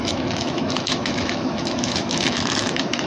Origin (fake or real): fake